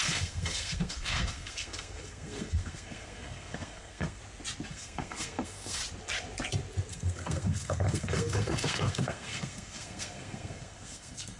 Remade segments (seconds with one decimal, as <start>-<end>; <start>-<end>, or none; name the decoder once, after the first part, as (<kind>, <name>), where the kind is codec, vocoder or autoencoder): 0.0-4.2 (codec, SNAC); 4.7-5.8; 6.9-11.4